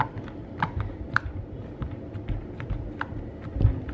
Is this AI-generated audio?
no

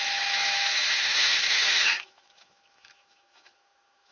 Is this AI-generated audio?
yes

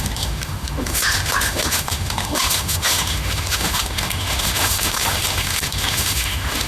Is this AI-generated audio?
yes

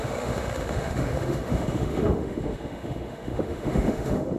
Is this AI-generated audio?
yes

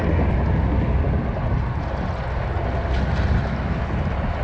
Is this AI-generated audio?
no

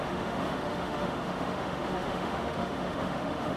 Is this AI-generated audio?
yes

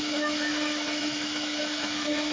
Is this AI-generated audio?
yes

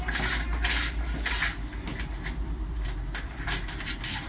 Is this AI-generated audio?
no